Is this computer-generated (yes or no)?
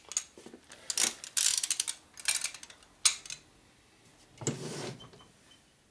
no